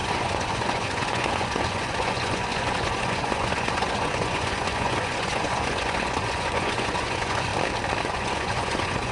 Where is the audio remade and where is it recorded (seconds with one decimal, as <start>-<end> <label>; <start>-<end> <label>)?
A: 0.0-7.5 remade; 7.5-8.1 recorded; 8.1-9.1 remade